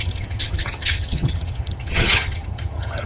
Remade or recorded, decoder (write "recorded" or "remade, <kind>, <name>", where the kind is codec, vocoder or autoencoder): remade, vocoder, HiFi-GAN